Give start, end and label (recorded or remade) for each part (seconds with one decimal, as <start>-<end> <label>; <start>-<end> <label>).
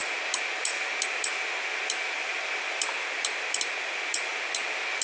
0.0-5.0 recorded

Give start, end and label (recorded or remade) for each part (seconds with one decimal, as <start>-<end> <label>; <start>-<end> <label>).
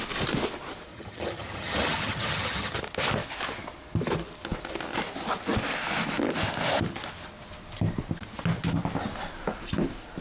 0.0-0.9 recorded; 0.9-2.8 remade; 2.8-10.2 recorded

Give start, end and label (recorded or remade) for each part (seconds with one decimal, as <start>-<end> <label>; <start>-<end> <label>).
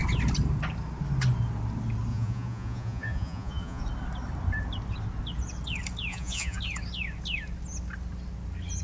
0.0-2.1 recorded; 2.1-3.8 remade; 3.8-6.1 recorded; 6.1-6.6 remade; 6.6-8.8 recorded